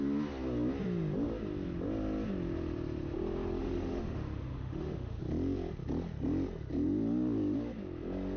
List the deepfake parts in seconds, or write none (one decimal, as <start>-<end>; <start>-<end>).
3.6-5.2